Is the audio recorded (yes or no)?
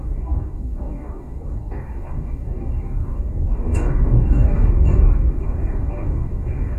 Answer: no